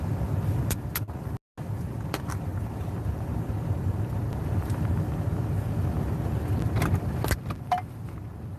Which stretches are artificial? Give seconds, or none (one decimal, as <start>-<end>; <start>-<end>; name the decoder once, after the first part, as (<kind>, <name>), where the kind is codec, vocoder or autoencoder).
none